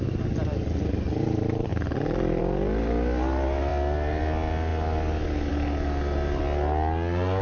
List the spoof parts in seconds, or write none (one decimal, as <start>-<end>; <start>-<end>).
none